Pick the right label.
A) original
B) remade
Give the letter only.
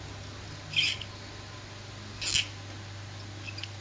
A